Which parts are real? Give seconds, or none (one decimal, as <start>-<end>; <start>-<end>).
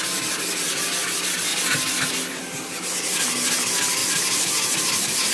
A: 0.0-5.3